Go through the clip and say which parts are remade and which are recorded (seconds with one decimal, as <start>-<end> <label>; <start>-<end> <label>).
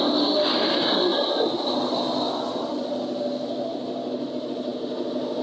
0.0-4.7 recorded; 4.7-5.4 remade